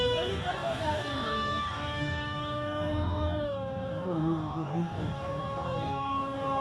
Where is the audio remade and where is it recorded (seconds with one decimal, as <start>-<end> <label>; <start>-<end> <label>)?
0.0-6.6 remade